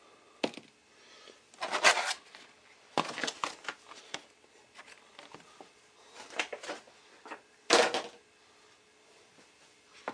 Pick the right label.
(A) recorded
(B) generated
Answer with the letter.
A